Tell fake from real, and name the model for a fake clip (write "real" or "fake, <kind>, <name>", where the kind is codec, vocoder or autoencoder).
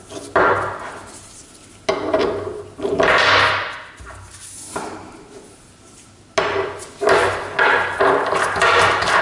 real